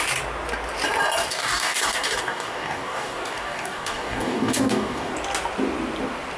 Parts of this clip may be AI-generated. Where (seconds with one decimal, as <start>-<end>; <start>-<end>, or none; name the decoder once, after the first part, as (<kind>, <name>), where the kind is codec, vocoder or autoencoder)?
1.3-5.1 (codec, DAC)